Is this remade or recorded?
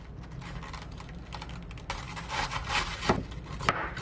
recorded